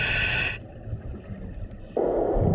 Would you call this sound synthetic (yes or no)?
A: no